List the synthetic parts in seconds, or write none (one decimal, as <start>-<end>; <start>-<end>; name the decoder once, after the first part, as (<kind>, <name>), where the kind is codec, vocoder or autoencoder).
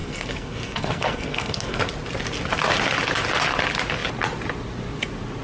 0.0-1.8 (codec, SNAC)